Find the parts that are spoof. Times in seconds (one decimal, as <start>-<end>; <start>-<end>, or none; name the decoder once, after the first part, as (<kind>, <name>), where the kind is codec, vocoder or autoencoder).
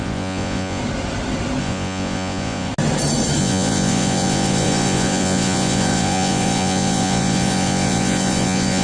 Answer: 0.0-0.8 (vocoder, Vocos); 1.6-2.7; 3.4-8.8